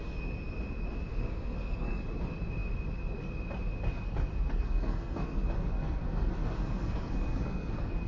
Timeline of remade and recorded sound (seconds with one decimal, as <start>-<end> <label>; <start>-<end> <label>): 0.0-1.1 recorded; 1.1-2.0 remade; 2.0-4.5 recorded; 4.5-8.1 remade